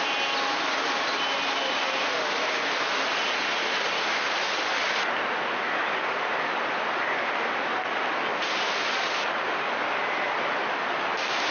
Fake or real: real